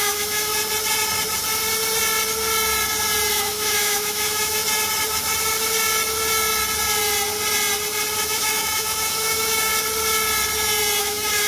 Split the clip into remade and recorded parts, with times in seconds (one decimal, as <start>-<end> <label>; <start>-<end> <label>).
0.0-0.5 remade; 0.5-3.3 recorded; 3.3-4.6 remade; 4.6-8.2 recorded; 8.2-9.7 remade; 9.7-11.0 recorded; 11.0-11.5 remade